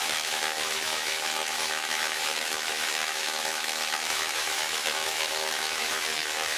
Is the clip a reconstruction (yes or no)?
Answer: yes